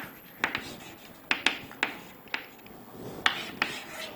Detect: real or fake real